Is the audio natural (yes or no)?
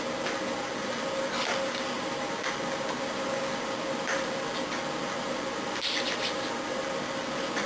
yes